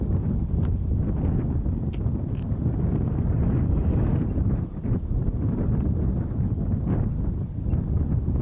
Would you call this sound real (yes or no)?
yes